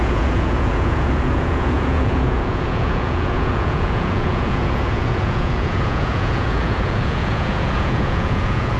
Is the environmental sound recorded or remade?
remade